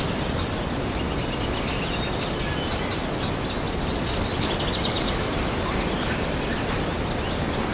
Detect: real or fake real